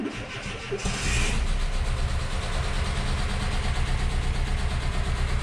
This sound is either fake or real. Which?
real